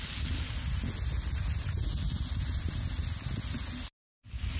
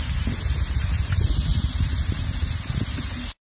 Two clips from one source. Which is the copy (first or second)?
second